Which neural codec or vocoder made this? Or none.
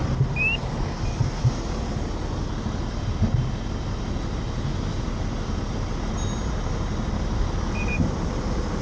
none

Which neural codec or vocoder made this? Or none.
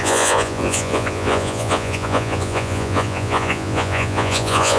vocoder, Vocos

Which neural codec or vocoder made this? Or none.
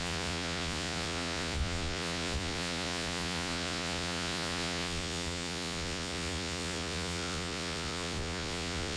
vocoder, Vocos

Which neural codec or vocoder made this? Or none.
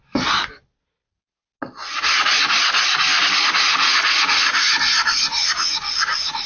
none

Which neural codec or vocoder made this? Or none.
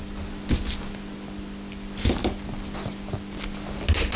none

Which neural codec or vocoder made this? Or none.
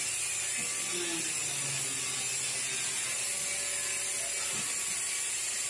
none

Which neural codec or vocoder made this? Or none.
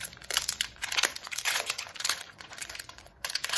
vocoder, Vocos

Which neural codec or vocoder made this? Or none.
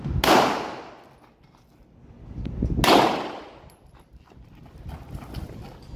none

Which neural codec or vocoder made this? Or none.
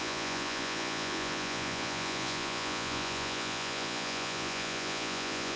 vocoder, Vocos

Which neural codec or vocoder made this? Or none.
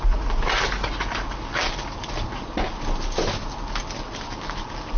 none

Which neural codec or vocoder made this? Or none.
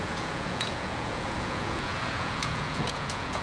vocoder, Vocos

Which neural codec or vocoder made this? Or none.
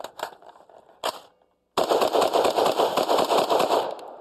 none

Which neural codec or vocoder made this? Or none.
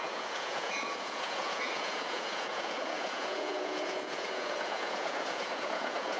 vocoder, Vocos